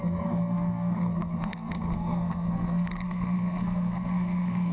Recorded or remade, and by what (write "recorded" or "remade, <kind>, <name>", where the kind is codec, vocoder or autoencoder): remade, codec, SNAC